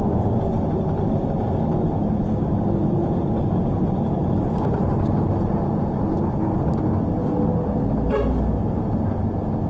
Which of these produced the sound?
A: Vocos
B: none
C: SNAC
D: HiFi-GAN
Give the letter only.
B